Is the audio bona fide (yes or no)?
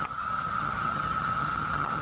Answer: no